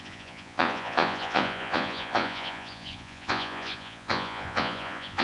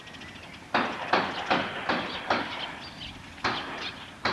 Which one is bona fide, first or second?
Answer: second